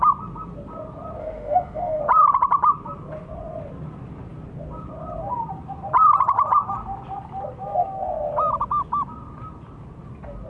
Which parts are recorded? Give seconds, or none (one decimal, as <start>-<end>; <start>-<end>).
0.0-1.2; 2.0-10.5